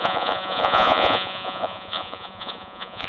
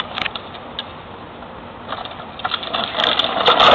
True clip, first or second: second